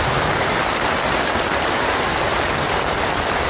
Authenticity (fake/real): fake